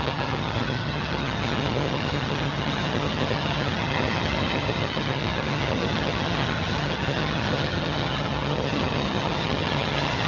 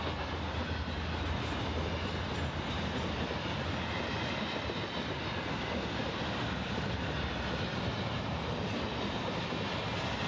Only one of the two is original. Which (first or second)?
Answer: second